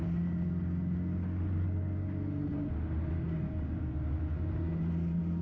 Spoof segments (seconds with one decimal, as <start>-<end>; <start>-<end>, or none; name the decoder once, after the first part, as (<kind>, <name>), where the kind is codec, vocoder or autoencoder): none